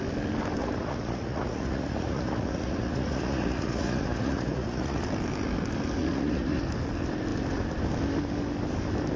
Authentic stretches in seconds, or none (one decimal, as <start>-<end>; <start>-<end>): 0.0-0.6; 5.0-6.0; 6.6-9.2